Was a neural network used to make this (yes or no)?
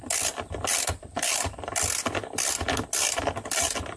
no